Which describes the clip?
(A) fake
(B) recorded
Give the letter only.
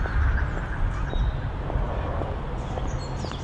B